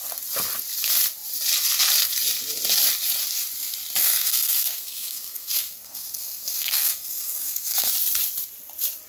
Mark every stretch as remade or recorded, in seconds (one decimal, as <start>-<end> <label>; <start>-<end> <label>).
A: 0.0-4.0 recorded; 4.0-7.9 remade; 7.9-9.1 recorded